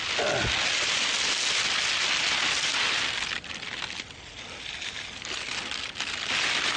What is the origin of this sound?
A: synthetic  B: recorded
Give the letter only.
B